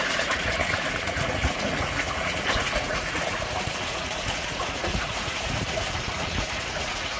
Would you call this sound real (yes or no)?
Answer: no